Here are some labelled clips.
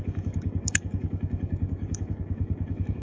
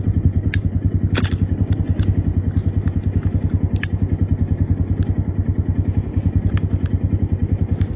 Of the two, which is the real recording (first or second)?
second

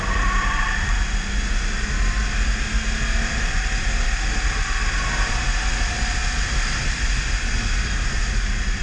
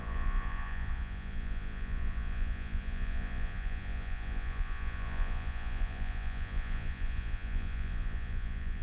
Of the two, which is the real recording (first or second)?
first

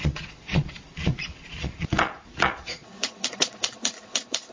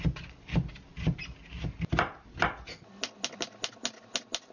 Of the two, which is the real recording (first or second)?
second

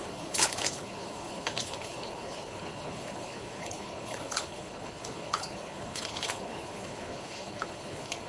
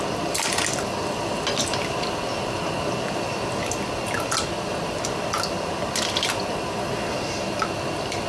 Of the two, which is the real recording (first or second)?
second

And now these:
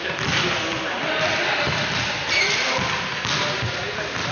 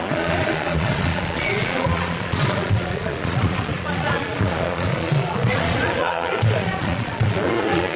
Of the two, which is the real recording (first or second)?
first